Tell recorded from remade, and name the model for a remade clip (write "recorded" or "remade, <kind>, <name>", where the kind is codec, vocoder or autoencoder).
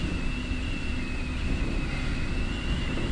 recorded